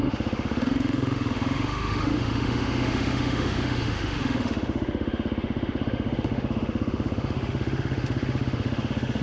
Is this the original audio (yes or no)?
no